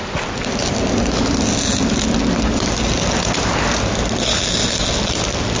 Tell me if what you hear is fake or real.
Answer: real